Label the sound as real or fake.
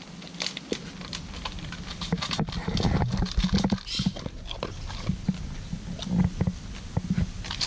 real